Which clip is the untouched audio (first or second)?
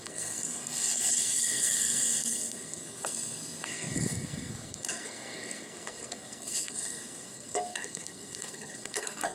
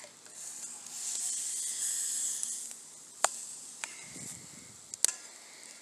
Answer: second